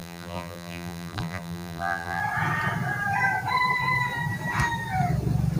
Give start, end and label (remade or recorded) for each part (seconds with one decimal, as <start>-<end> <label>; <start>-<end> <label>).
0.0-2.2 remade; 2.2-5.6 recorded